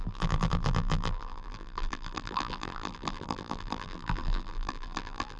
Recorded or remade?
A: remade